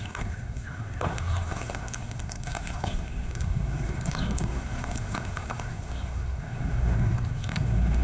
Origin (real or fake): fake